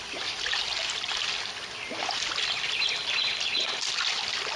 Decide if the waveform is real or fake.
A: fake